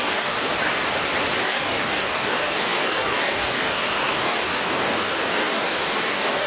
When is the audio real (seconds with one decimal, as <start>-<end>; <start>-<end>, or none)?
0.5-1.4